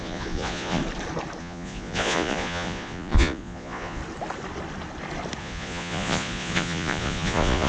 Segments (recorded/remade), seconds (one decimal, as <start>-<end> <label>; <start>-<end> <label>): 0.0-0.8 remade; 0.8-1.4 recorded; 1.4-4.0 remade; 4.0-5.4 recorded; 5.4-7.7 remade

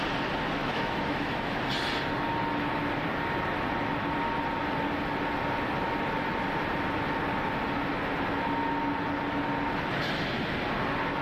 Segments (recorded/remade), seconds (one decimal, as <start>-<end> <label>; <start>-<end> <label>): 0.0-0.6 recorded; 0.6-1.6 remade; 1.6-11.2 recorded

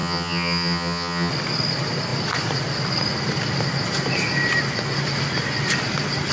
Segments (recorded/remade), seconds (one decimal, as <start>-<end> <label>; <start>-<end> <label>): 0.0-1.3 remade; 1.3-6.3 recorded

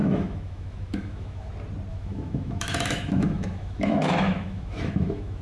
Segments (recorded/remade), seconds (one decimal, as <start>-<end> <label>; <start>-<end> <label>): 0.0-1.5 remade; 1.5-1.9 recorded; 1.9-5.4 remade

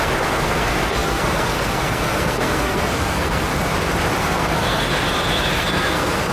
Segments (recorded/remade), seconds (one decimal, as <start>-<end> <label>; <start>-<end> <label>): 0.0-3.5 remade; 3.5-4.2 recorded; 4.2-4.9 remade; 4.9-5.5 recorded; 5.5-6.3 remade

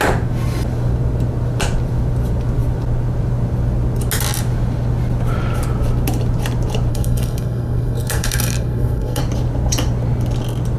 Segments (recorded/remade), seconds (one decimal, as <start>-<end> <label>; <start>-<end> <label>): 0.0-6.9 recorded; 6.9-9.2 remade; 9.2-10.8 recorded

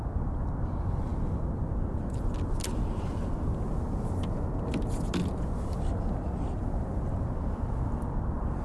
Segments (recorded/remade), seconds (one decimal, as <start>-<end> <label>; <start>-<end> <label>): 0.0-8.6 recorded

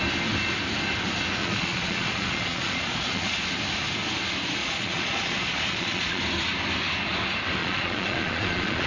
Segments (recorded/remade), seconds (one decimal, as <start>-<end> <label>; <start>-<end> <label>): 0.0-1.4 recorded; 1.4-3.4 remade; 3.4-4.6 recorded; 4.6-6.2 remade; 6.2-7.6 recorded; 7.6-8.9 remade